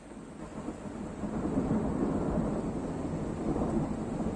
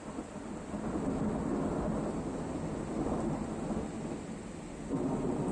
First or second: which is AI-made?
first